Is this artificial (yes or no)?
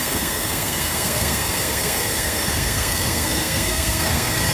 yes